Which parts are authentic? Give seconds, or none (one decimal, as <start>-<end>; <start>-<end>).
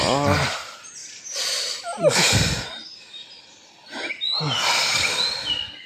0.0-5.9